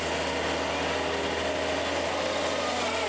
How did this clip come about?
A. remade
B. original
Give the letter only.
B